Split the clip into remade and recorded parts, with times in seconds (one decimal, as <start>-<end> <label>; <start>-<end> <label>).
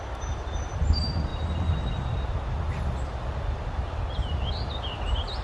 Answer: 0.0-5.4 recorded